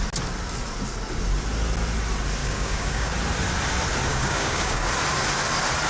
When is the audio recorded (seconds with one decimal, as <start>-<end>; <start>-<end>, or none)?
0.0-2.4; 3.1-4.1; 4.9-5.9